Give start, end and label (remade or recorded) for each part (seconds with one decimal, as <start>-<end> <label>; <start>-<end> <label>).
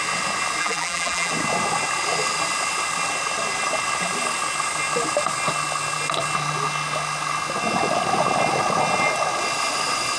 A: 0.0-0.6 recorded; 0.6-1.3 remade; 1.3-10.2 recorded